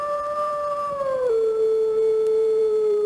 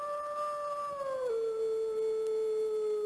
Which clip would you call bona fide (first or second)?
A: second